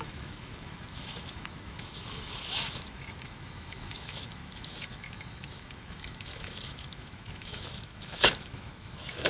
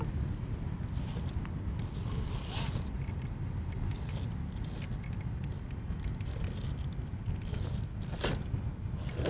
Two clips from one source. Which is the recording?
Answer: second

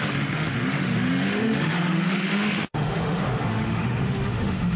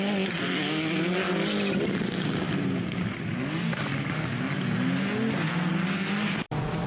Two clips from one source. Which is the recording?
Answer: second